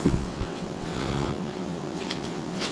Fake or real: fake